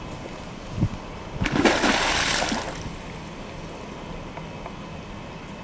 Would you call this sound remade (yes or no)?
no